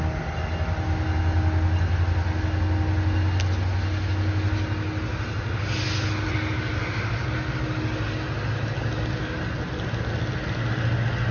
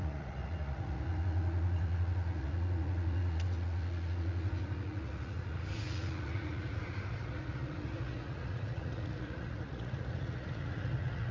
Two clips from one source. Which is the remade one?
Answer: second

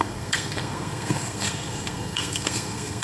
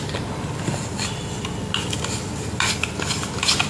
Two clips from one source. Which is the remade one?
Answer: first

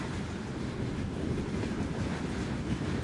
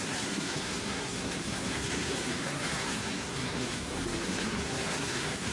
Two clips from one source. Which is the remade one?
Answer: second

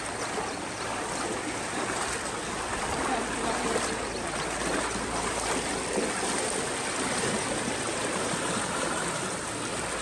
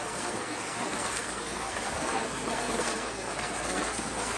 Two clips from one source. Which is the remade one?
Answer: second